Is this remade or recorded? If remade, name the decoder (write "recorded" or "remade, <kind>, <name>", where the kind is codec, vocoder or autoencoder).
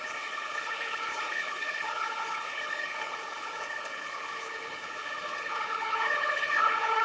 remade, codec, HILCodec